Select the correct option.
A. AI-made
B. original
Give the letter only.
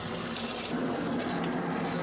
B